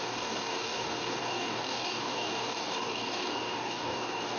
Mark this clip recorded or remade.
remade